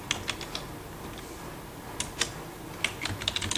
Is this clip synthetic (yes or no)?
no